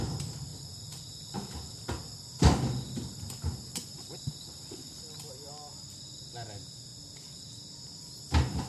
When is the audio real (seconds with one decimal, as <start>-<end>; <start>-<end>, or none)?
0.0-8.7